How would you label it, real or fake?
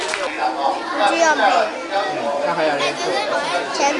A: real